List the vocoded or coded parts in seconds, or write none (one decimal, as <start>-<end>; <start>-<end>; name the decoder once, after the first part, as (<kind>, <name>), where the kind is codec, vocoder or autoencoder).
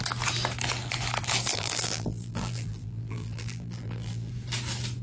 1.5-4.3 (vocoder, BigVGAN v2)